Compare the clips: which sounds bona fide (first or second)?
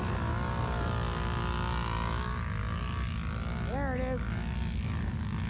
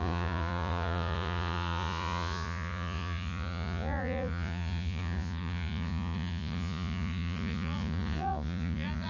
first